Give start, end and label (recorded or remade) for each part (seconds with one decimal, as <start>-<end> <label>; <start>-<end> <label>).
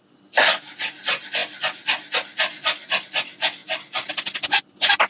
0.0-5.1 recorded